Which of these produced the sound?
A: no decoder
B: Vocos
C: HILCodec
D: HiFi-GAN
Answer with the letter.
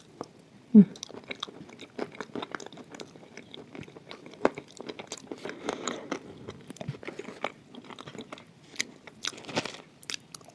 A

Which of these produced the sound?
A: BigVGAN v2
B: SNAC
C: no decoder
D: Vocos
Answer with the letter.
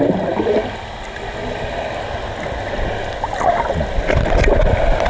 C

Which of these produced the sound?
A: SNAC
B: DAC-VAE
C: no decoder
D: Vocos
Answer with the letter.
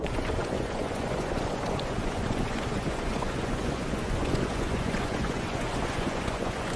D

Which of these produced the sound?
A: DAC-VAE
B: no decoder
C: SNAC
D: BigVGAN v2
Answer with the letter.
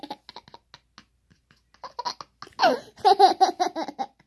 B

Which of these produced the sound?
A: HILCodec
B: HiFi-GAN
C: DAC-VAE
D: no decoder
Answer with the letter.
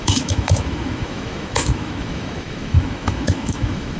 C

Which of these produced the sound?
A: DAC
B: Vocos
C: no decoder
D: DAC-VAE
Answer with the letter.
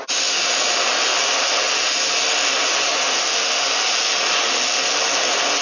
C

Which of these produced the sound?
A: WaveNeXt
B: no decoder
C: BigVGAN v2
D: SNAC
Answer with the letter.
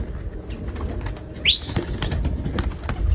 B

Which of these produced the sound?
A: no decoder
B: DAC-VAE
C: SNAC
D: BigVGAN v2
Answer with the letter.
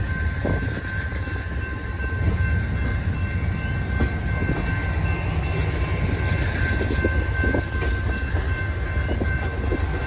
A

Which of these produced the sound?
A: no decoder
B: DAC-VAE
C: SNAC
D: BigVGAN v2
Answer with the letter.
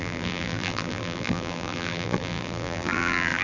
D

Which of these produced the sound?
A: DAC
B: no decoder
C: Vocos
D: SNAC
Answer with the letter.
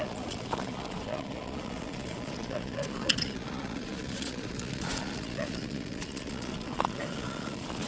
C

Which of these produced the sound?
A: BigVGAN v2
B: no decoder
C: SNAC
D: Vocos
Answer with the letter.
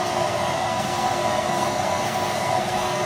C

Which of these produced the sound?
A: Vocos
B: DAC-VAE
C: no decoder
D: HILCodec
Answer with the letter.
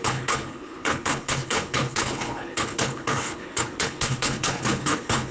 D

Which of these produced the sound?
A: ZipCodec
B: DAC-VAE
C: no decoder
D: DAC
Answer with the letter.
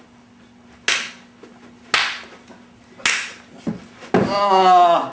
C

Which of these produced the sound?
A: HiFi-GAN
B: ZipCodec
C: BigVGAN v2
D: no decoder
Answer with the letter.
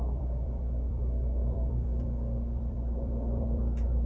C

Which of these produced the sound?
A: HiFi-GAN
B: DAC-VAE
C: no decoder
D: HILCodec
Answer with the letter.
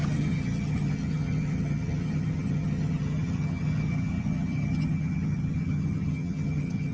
A